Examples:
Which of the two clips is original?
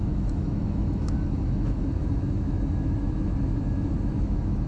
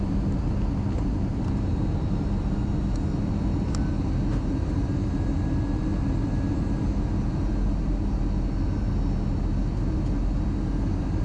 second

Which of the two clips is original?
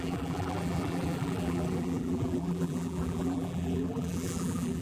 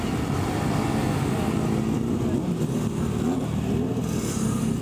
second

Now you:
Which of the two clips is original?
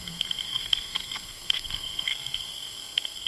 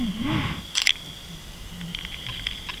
second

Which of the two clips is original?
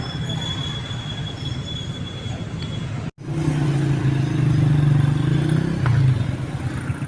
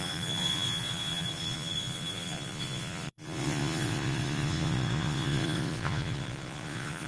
first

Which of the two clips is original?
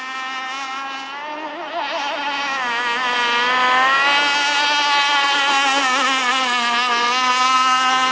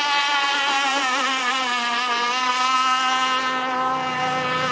first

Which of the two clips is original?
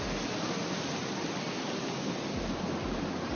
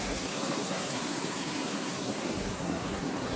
first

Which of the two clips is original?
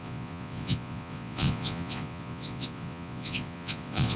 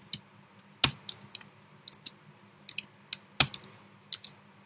second